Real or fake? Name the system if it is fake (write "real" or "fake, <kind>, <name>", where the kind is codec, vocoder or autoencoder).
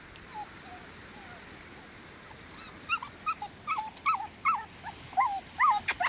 real